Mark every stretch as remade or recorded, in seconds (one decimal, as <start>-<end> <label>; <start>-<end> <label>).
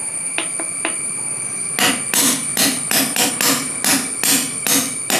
0.0-2.5 recorded; 2.5-3.3 remade; 3.3-5.2 recorded